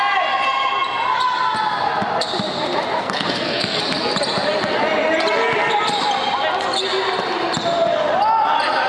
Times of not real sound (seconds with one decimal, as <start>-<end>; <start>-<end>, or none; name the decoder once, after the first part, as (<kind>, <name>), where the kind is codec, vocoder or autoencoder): 3.0-3.8 (codec, SNAC)